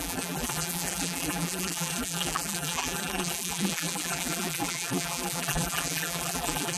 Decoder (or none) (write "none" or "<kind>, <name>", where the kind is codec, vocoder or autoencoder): vocoder, BigVGAN v2